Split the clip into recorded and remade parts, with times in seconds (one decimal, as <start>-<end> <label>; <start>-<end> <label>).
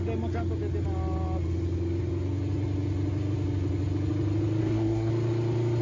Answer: 0.0-4.6 recorded; 4.6-5.1 remade; 5.1-5.8 recorded